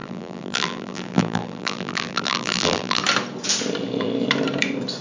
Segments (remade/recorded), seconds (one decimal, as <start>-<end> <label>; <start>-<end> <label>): 0.0-3.0 remade; 3.0-5.0 recorded